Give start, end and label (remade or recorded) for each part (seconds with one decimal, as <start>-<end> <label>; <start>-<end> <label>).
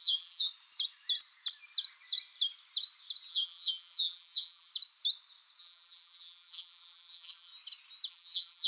0.0-0.5 remade; 0.5-3.3 recorded; 3.3-4.7 remade; 4.7-5.6 recorded; 5.6-7.5 remade; 7.5-8.1 recorded; 8.1-8.7 remade